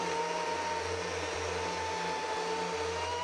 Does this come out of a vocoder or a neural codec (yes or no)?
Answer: no